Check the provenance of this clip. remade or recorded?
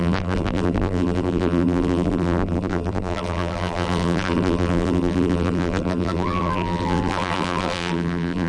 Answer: remade